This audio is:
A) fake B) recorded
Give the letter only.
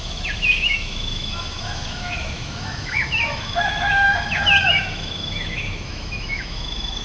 A